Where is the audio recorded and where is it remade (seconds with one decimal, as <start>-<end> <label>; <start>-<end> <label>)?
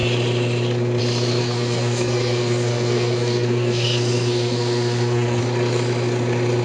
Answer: 0.0-1.4 recorded; 1.4-5.4 remade; 5.4-6.6 recorded